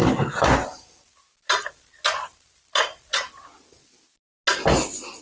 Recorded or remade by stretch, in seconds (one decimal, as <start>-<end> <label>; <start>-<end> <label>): 0.0-5.2 recorded